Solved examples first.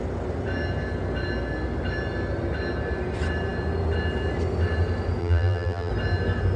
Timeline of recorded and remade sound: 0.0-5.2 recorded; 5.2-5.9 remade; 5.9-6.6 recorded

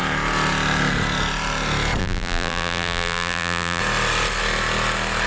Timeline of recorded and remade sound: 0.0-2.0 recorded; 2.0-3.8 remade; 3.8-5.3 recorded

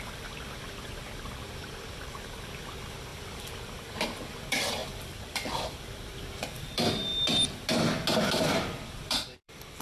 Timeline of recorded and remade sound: 0.0-7.1 remade; 7.1-8.2 recorded; 8.2-9.8 remade

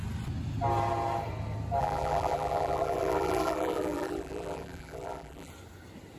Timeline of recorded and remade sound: 0.0-1.8 recorded; 1.8-5.5 remade; 5.5-6.2 recorded